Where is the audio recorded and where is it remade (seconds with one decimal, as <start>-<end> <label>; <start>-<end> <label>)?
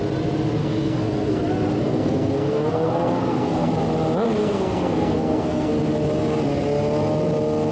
0.0-0.6 recorded; 0.6-1.4 remade; 1.4-1.8 recorded; 1.8-3.7 remade; 3.7-4.4 recorded; 4.4-5.7 remade; 5.7-7.7 recorded